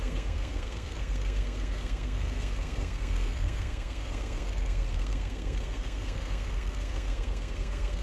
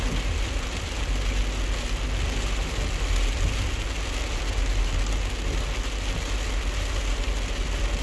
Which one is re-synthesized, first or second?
first